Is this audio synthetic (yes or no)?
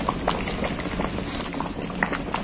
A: no